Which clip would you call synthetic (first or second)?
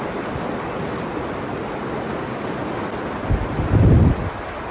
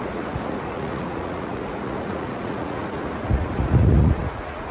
second